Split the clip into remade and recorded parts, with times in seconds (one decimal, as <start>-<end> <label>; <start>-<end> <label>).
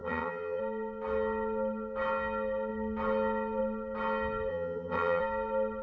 0.0-0.6 remade; 0.6-4.5 recorded; 4.5-5.2 remade; 5.2-5.8 recorded